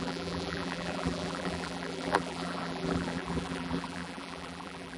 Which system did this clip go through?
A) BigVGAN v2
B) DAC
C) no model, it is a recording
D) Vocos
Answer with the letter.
A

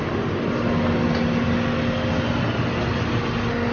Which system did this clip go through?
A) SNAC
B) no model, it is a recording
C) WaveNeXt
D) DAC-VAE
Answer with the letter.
B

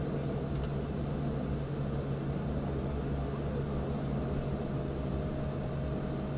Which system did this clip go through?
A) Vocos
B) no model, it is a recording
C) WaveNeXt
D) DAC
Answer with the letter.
B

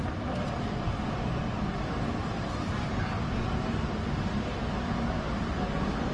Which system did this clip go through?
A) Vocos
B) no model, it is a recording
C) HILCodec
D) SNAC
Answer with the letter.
B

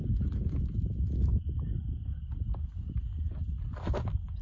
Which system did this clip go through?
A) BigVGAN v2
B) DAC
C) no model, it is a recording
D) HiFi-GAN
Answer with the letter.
C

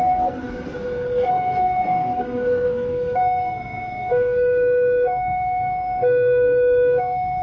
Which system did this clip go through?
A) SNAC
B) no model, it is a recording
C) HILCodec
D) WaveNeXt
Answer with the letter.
A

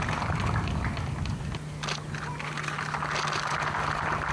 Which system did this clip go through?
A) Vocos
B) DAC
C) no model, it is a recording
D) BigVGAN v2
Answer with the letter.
C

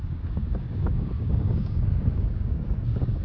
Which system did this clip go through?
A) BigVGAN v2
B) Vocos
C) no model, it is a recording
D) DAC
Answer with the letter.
D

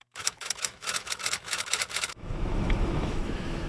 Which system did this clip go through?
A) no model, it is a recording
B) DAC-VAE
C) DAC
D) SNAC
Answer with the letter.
B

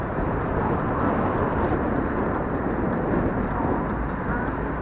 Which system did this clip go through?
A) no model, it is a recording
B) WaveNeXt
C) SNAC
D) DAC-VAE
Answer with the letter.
A